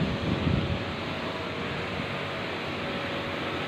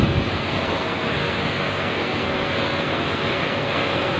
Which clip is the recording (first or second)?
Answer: first